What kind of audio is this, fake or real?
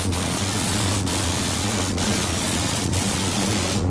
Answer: fake